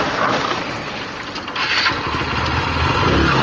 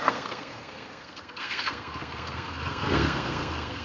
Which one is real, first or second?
first